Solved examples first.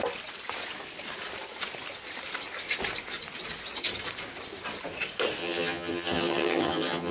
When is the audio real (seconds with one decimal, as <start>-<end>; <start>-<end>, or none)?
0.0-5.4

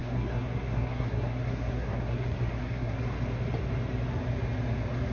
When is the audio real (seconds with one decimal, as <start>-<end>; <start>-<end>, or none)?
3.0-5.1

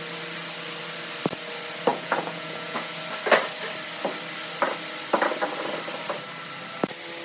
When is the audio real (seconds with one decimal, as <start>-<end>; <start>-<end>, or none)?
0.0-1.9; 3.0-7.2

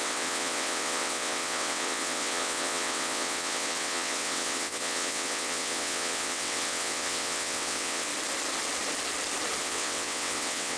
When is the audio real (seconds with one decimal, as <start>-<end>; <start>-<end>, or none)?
8.1-9.6